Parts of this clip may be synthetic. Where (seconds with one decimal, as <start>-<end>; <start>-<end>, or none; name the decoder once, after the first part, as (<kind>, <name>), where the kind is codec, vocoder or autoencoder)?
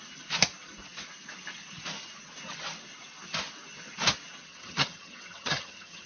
4.5-6.1 (vocoder, HiFi-GAN)